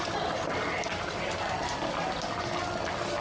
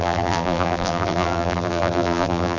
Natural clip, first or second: first